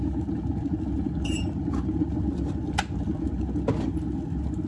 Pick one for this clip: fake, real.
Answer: real